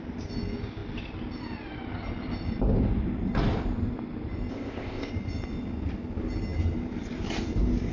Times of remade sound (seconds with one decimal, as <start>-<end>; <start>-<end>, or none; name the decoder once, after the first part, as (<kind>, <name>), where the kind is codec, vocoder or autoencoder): 4.5-5.1 (codec, ZipCodec)